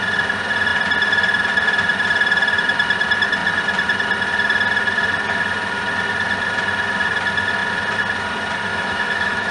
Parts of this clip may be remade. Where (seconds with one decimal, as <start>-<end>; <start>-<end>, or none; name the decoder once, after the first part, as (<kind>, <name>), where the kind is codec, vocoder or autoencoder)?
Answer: 8.7-9.5 (autoencoder, DAC-VAE)